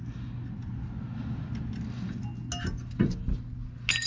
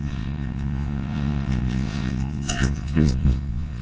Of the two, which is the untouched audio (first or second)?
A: first